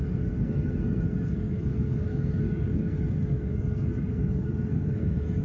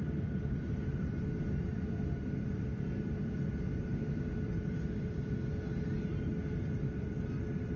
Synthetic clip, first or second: first